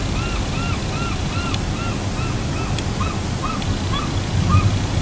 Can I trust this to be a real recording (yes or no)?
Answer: yes